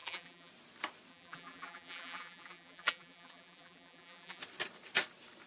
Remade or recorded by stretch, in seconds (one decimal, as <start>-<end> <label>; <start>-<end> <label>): 0.0-0.5 remade; 0.5-1.1 recorded; 1.1-4.4 remade; 4.4-5.5 recorded